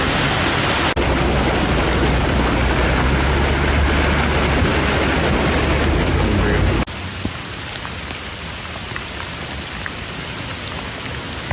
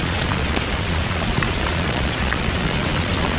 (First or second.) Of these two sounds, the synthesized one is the second